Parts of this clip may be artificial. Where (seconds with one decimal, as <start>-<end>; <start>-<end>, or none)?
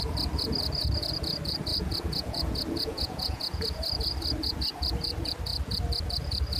1.7-3.9